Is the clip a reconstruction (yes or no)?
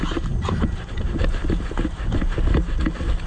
no